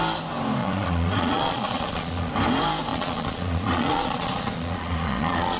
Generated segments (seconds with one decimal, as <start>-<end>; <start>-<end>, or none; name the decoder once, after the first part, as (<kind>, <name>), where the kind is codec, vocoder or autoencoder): 0.6-2.3 (vocoder, Vocos); 2.9-5.6

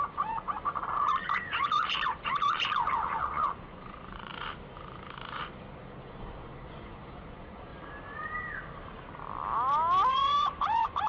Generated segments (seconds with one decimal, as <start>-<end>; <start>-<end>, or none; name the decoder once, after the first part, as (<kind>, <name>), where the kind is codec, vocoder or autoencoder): 0.0-4.3 (vocoder, Vocos); 5.8-7.7; 10.1-11.1

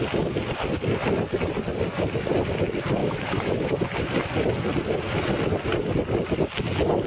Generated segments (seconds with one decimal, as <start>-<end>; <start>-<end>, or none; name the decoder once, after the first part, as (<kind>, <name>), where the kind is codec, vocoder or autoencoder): 3.0-3.7 (autoencoder, DAC-VAE)

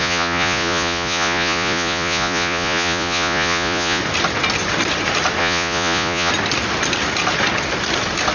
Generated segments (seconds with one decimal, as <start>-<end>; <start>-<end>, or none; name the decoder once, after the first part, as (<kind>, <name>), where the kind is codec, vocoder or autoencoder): 0.0-4.0 (vocoder, Vocos); 5.4-6.3

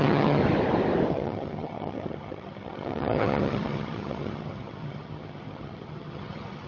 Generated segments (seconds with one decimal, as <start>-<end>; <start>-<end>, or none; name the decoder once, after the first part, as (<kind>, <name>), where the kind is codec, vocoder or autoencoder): 0.0-0.4 (vocoder, HiFi-GAN); 1.1-6.7

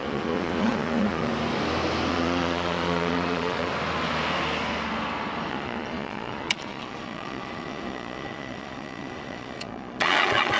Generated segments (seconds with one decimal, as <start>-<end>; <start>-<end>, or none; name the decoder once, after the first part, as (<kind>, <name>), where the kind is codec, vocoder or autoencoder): 0.0-1.3 (vocoder, Vocos); 2.1-3.7; 5.5-10.6

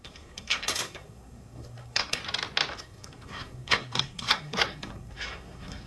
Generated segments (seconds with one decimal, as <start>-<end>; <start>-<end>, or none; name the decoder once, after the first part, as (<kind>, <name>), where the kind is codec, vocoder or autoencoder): 0.0-2.2 (codec, SNAC); 2.7-5.9